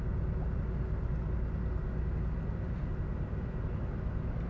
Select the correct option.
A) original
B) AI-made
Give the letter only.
A